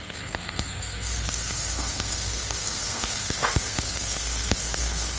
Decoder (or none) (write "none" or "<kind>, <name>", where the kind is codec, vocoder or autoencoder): codec, SNAC